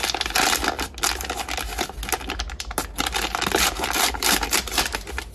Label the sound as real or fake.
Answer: real